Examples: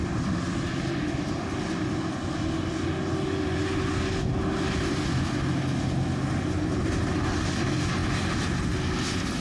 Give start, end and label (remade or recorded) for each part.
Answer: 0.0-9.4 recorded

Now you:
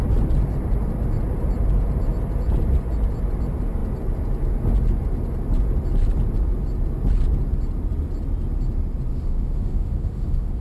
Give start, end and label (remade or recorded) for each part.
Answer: 0.0-9.1 recorded; 9.1-10.6 remade

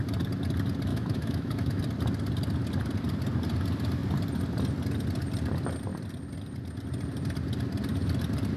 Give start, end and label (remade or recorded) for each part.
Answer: 0.0-0.9 recorded; 0.9-1.8 remade; 1.8-8.6 recorded

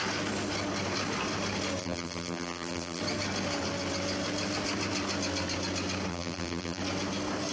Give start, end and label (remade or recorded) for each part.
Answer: 0.0-1.8 recorded; 1.8-3.0 remade; 3.0-6.1 recorded; 6.1-6.8 remade; 6.8-7.5 recorded

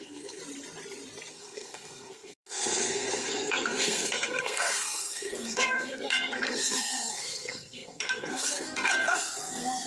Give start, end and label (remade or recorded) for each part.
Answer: 0.0-0.4 remade; 0.4-1.3 recorded; 1.3-9.9 remade